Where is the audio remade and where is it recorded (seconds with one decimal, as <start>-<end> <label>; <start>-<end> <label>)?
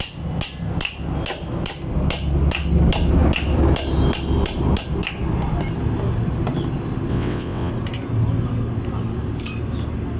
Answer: 0.0-7.1 recorded; 7.1-7.7 remade; 7.7-10.2 recorded